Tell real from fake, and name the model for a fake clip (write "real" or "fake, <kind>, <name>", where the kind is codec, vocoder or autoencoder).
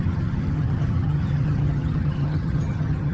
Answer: fake, vocoder, HiFi-GAN